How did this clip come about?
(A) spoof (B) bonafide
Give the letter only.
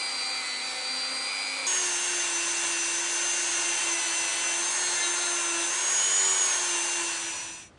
B